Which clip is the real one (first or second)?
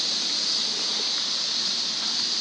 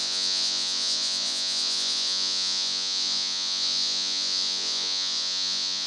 first